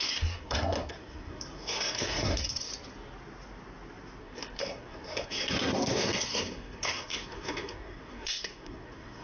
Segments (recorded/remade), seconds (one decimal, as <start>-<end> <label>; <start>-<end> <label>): 0.0-2.7 remade; 2.7-4.2 recorded; 4.2-9.2 remade